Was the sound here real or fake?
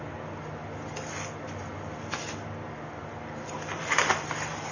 real